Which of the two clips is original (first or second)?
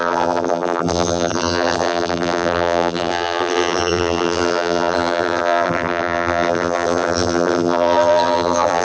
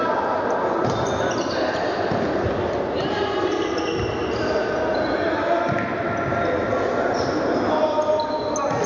second